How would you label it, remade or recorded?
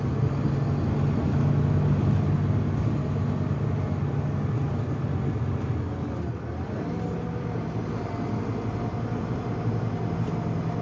recorded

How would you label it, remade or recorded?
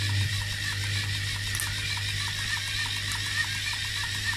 remade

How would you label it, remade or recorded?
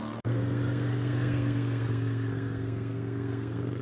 remade